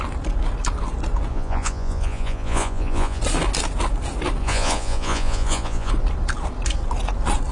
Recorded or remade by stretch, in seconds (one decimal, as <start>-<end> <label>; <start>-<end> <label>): 0.0-1.3 recorded; 1.3-3.2 remade; 3.2-4.4 recorded; 4.4-5.9 remade; 5.9-7.5 recorded